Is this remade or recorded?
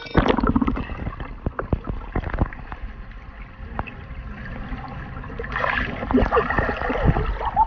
recorded